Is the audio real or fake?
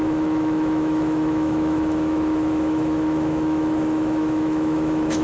fake